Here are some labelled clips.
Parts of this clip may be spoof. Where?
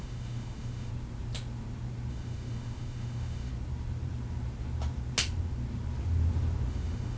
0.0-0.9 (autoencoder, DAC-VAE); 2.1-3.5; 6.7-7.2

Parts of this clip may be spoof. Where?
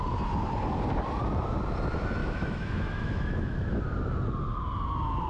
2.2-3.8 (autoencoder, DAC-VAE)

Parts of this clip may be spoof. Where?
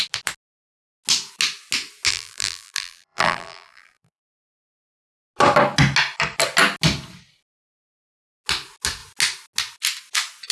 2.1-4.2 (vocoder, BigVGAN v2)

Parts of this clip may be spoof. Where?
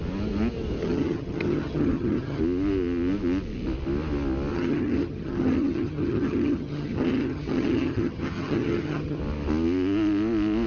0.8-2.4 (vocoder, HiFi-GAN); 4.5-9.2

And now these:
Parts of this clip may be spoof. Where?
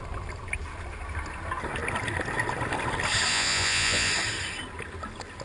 3.3-4.1 (vocoder, Vocos)